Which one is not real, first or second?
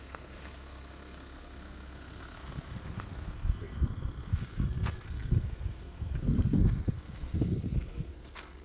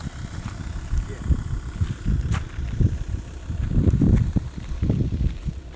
first